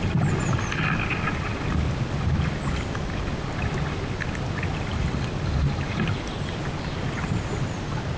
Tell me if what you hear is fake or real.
real